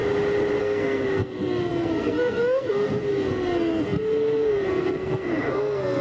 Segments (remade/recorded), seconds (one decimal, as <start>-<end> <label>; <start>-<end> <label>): 0.0-0.6 recorded; 0.6-6.0 remade